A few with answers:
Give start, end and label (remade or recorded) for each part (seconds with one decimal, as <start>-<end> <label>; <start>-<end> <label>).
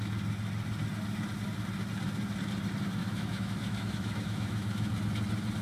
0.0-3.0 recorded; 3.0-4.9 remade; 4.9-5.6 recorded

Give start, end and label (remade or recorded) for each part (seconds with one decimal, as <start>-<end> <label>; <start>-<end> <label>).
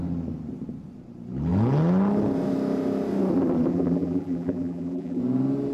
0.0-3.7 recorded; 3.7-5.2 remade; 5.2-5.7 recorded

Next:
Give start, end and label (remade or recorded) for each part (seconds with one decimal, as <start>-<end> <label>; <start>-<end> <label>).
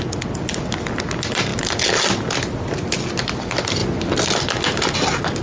0.0-5.4 recorded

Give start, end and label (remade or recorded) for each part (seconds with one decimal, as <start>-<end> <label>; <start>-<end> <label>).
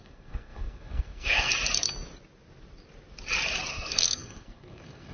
0.0-1.5 remade; 1.5-3.7 recorded; 3.7-5.1 remade